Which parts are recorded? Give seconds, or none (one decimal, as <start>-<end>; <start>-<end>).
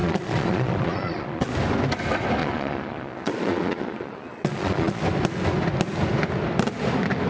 1.5-2.4; 5.0-7.3